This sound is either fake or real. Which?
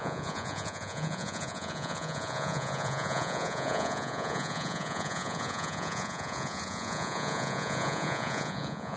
fake